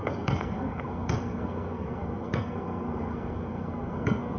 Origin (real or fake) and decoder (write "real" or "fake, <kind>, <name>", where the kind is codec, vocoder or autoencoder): fake, codec, SNAC